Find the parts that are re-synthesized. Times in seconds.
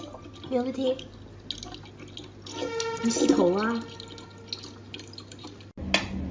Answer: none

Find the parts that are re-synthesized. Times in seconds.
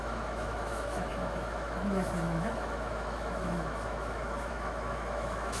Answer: 0.0-5.6 (autoencoder, DAC-VAE)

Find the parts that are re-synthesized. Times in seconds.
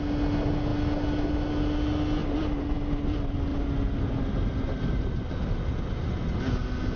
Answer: 2.2-2.9 (vocoder, BigVGAN v2); 3.5-4.1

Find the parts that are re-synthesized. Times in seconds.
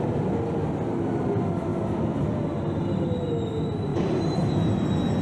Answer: 3.9-4.5 (vocoder, BigVGAN v2)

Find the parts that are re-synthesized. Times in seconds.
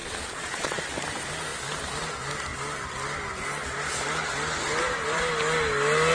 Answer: 0.0-0.8 (vocoder, Vocos)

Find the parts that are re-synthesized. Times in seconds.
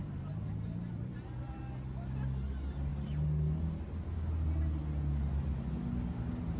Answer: 0.0-1.6 (vocoder, BigVGAN v2)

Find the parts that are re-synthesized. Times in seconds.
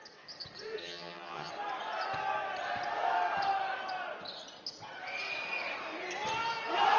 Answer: 0.8-1.5 (vocoder, HiFi-GAN)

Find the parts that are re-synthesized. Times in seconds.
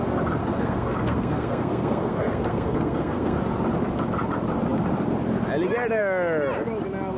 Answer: 0.4-3.4 (codec, SNAC)